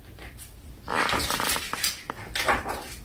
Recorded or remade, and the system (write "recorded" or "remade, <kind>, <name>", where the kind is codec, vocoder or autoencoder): remade, vocoder, BigVGAN v2